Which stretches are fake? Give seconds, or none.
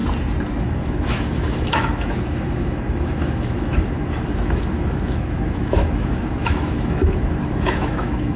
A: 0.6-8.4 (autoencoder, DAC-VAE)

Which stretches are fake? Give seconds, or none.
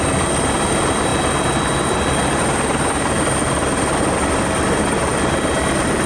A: none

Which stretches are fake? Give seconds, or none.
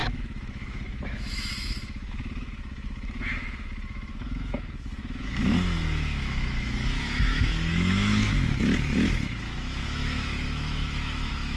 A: 0.0-11.6 (autoencoder, DAC-VAE)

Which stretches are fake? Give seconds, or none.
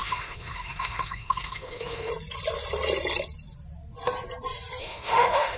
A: 0.0-2.1 (autoencoder, DAC-VAE); 4.8-5.6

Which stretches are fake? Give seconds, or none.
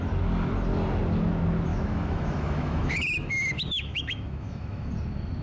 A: 1.7-4.9 (autoencoder, DAC-VAE)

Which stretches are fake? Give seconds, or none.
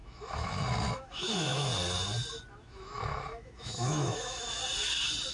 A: 0.0-1.7 (autoencoder, DAC-VAE); 2.5-4.6